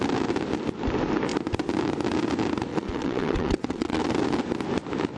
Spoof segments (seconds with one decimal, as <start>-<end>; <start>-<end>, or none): 2.7-4.0

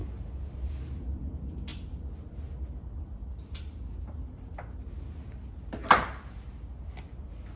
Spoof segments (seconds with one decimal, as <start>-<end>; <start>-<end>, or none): none

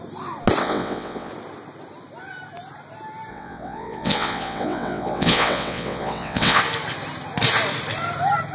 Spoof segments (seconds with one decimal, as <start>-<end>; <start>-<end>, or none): 0.6-1.3; 3.3-6.6